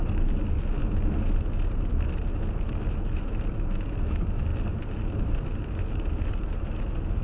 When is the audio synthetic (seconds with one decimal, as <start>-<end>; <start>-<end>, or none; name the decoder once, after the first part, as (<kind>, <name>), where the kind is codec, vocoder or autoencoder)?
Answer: none